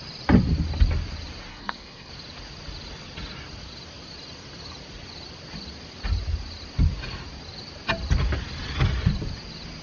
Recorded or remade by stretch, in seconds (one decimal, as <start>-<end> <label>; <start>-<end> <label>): 0.0-1.5 recorded; 1.5-2.1 remade; 2.1-9.8 recorded